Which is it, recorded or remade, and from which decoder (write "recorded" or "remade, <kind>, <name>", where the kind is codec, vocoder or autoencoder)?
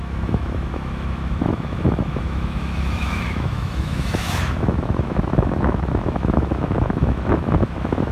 remade, autoencoder, DAC-VAE